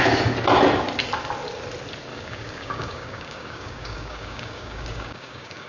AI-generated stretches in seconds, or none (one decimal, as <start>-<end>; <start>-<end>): 2.1-5.7